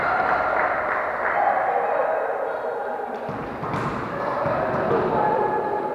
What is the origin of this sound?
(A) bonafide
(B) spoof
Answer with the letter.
A